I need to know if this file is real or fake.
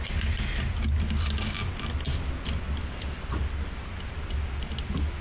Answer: real